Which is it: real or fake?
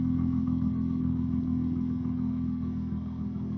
fake